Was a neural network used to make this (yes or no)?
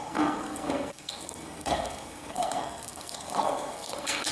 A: yes